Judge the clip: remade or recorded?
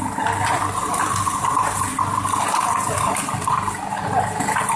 recorded